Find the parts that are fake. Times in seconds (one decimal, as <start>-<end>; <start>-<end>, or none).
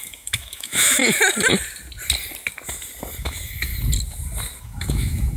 0.0-1.0; 3.2-3.7; 4.6-5.4